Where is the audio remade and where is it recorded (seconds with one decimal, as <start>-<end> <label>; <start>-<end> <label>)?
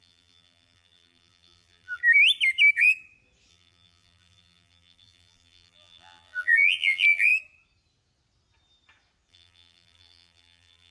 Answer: 0.0-2.0 remade; 2.0-3.5 recorded; 3.5-7.3 remade; 7.3-9.3 recorded; 9.3-10.9 remade